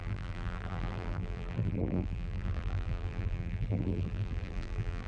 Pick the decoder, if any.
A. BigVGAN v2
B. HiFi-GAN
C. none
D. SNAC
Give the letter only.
A